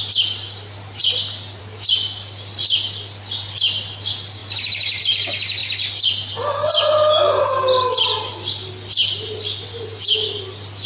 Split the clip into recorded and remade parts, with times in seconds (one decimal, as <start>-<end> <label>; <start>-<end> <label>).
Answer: 0.0-10.9 recorded